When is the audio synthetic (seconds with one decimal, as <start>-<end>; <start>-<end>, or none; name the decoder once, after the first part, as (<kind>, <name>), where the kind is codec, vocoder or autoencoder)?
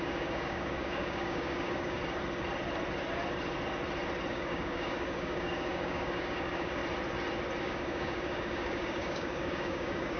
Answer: 0.0-2.0 (codec, DAC); 4.3-6.8; 7.6-10.2